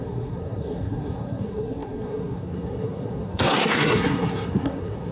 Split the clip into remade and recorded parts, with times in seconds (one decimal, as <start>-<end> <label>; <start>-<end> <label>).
0.0-5.1 remade